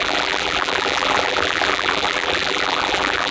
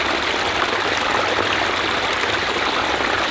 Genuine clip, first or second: second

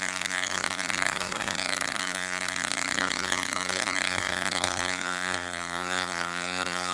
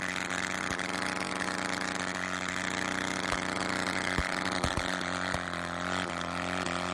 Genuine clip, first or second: second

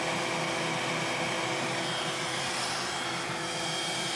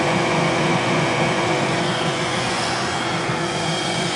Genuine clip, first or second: first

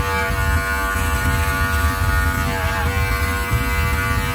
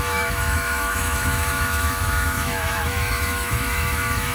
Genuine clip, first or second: first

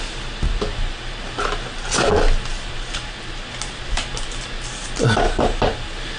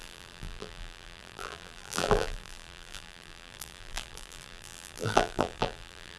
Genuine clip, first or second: first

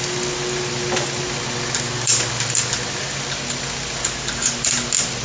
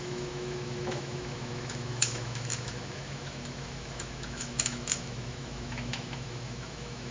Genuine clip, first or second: first